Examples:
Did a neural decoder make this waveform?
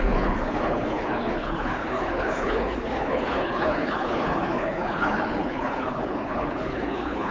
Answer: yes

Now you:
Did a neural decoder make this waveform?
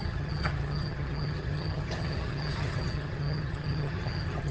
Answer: yes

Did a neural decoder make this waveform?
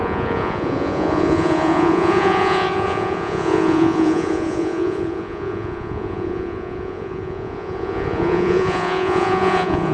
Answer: yes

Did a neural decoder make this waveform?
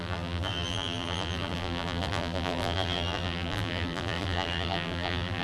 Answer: yes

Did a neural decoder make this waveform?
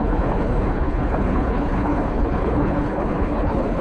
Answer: yes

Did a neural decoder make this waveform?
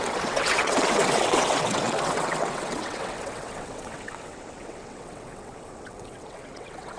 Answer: yes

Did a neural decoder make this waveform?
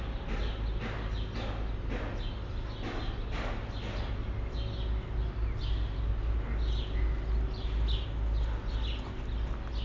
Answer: no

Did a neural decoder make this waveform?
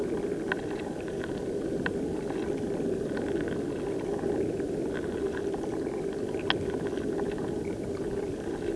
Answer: no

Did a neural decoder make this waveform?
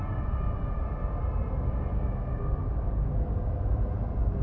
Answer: no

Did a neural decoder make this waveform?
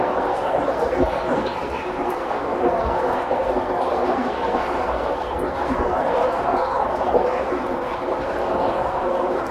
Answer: yes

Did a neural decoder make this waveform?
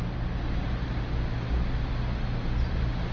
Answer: no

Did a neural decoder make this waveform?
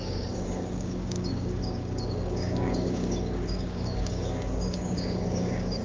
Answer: yes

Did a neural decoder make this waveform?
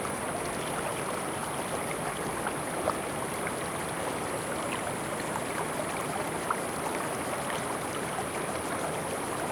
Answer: no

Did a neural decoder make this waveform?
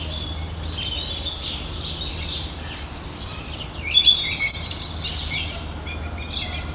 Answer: no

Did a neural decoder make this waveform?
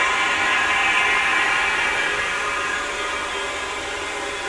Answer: no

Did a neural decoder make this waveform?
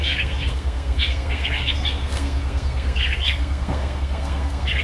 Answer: yes